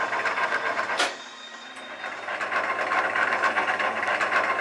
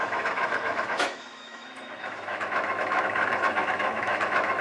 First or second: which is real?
first